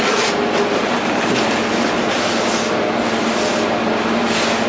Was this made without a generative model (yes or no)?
yes